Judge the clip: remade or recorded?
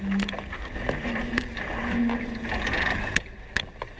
recorded